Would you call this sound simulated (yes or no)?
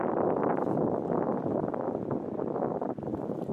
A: no